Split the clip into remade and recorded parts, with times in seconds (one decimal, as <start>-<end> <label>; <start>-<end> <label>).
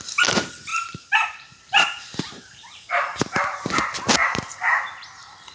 0.0-0.7 recorded; 0.7-3.7 remade; 3.7-4.2 recorded; 4.2-4.8 remade; 4.8-5.5 recorded